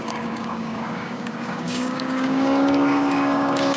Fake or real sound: fake